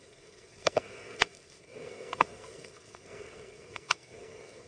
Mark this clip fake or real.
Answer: fake